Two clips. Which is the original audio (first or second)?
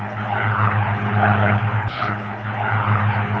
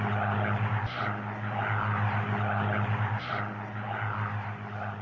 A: second